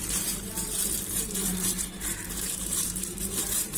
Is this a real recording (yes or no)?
no